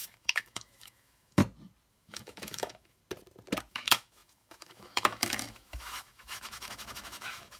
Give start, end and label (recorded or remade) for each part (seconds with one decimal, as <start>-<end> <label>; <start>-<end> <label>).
0.0-1.4 remade; 1.4-1.9 recorded; 1.9-3.0 remade; 3.0-3.7 recorded; 3.7-7.6 remade